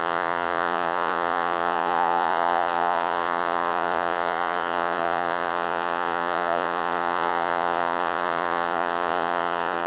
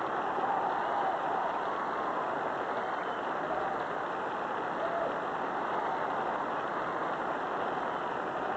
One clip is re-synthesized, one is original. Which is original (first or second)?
second